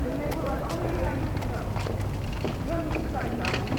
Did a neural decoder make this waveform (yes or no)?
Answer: no